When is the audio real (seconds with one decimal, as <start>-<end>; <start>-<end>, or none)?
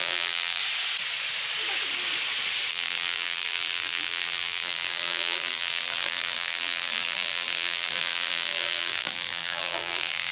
0.6-2.7